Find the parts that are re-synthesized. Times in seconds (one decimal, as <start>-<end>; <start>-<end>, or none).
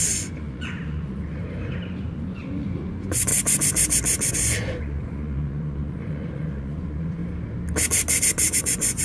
0.0-1.4; 2.0-3.3; 4.3-7.2; 8.6-9.0